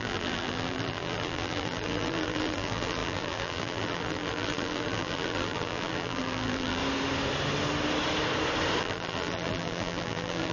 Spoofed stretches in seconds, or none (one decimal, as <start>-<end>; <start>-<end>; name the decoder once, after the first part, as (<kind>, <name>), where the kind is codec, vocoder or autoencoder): 0.0-6.8 (vocoder, BigVGAN v2); 8.8-10.5